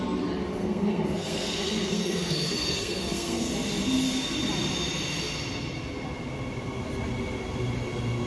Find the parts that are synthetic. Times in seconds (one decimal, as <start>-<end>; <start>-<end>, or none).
0.6-3.5